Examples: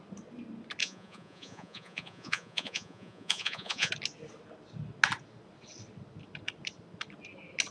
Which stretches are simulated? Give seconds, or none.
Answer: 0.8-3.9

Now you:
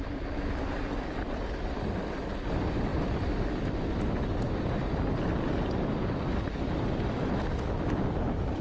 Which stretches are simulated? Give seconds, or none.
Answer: 2.9-3.7

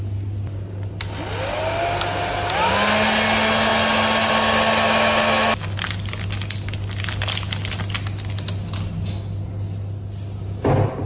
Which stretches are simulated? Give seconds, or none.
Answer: none

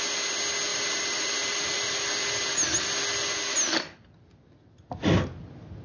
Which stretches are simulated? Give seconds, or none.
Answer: 0.7-2.5

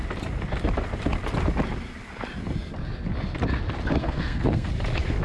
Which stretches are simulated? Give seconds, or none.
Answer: 4.0-4.7

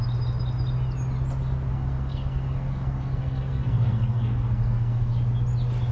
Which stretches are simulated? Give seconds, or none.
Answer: 1.7-5.2

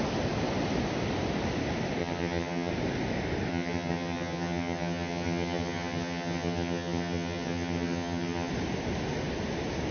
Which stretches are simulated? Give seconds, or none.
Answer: 2.0-2.7; 3.5-8.5

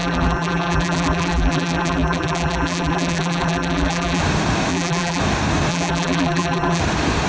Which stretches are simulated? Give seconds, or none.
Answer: 0.0-4.2; 4.7-5.2; 5.7-6.8